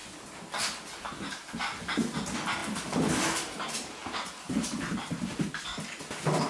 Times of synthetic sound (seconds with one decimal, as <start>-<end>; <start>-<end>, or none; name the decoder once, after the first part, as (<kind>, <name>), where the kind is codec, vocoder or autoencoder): 4.0-5.1 (vocoder, BigVGAN v2)